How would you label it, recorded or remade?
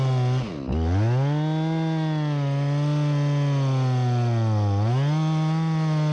recorded